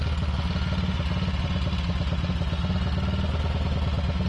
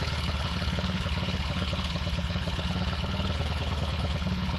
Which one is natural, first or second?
first